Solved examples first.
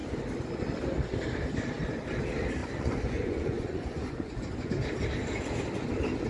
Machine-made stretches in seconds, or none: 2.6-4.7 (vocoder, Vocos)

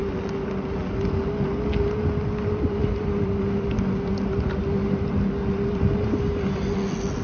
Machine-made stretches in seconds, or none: none

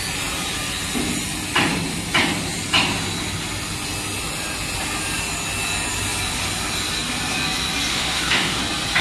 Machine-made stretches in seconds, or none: 7.9-8.6 (autoencoder, DAC-VAE)

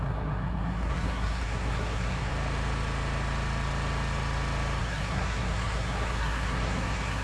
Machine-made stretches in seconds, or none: 0.0-2.3 (codec, SNAC); 4.8-7.2

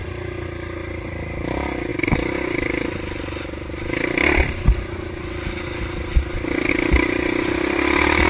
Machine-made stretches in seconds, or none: none

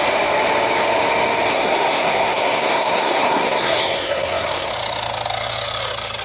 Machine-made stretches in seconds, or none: 1.5-4.7 (codec, SNAC)

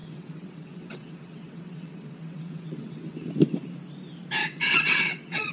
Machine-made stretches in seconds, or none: 0.0-3.3 (vocoder, WaveNeXt); 4.4-5.5

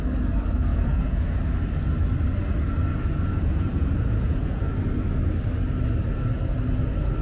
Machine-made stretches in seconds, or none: 0.7-1.4 (vocoder, Vocos); 2.9-4.6